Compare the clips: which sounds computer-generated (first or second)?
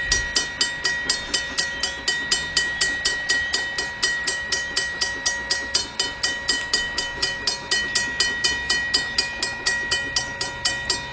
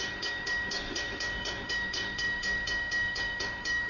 second